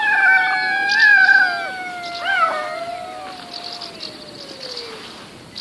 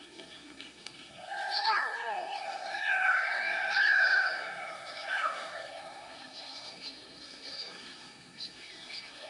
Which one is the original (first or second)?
first